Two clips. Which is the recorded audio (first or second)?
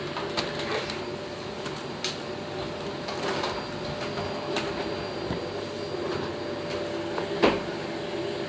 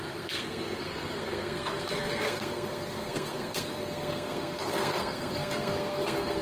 first